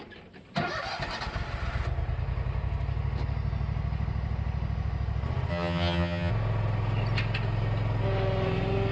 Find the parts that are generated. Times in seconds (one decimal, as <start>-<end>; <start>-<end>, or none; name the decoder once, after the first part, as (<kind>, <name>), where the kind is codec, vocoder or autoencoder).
5.5-6.3 (vocoder, HiFi-GAN)